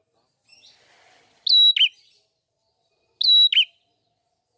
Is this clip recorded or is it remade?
recorded